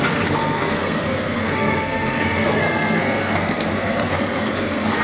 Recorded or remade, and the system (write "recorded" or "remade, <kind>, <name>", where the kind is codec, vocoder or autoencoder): remade, codec, SNAC